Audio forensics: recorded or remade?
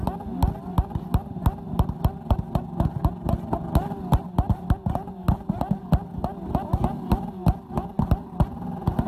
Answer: recorded